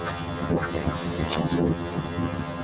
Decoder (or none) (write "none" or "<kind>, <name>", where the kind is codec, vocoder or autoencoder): vocoder, HiFi-GAN